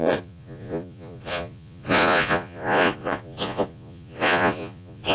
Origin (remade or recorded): remade